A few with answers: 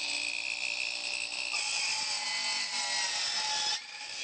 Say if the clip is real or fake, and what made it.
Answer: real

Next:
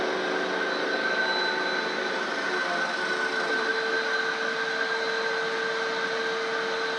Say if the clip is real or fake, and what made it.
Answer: real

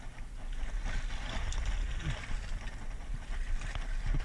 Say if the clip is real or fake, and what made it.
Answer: real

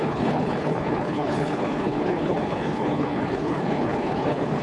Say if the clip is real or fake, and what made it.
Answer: fake, codec, HILCodec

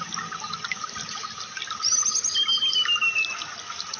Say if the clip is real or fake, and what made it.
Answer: real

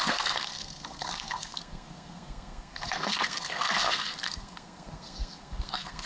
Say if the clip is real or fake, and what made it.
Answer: fake, codec, SNAC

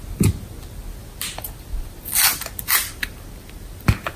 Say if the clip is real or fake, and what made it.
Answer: real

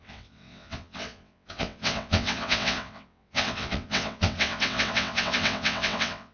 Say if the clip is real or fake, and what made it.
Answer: fake, vocoder, WaveNeXt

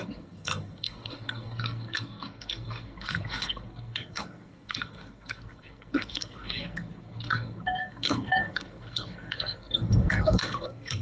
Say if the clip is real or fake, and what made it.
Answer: fake, codec, SNAC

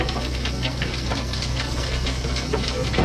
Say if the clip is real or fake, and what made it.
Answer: fake, codec, SNAC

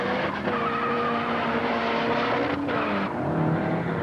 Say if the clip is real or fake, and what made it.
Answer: real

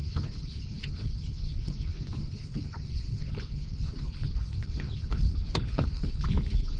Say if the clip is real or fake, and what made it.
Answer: fake, codec, HILCodec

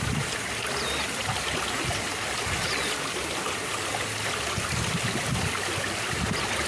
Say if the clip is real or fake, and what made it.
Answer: real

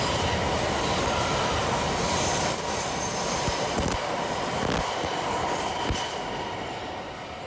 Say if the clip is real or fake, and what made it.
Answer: real